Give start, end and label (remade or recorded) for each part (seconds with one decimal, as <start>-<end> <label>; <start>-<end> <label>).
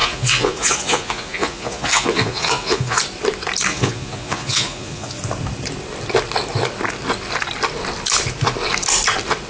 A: 0.0-3.0 remade; 3.0-3.7 recorded; 3.7-5.2 remade; 5.2-9.5 recorded